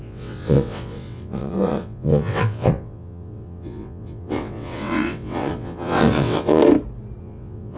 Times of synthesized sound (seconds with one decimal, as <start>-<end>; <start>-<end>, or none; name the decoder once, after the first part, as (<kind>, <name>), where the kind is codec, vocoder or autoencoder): 0.0-6.6 (vocoder, WaveNeXt); 7.2-7.8